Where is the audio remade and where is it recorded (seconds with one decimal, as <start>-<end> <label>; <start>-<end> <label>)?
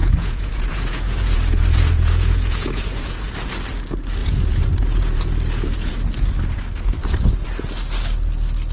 0.0-3.3 remade; 3.3-4.2 recorded; 4.2-5.9 remade; 5.9-8.7 recorded